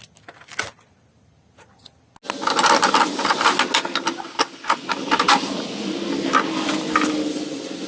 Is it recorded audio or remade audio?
recorded